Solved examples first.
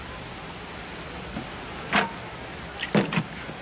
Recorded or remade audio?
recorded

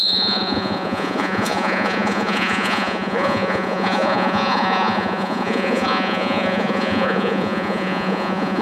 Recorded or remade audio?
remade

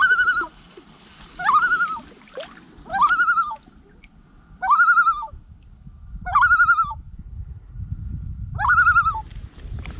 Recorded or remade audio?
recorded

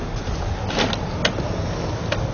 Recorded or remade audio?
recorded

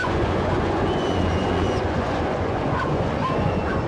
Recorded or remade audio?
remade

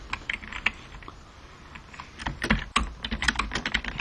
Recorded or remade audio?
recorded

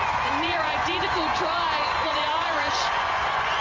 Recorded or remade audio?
remade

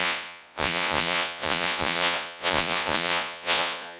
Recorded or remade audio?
remade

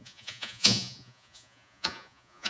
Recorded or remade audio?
remade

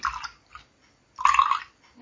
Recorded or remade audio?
recorded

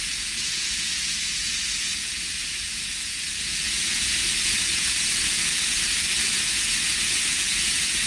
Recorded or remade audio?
remade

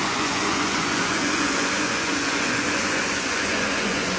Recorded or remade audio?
remade